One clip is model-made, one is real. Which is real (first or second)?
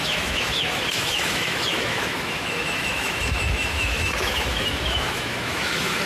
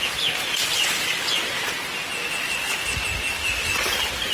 second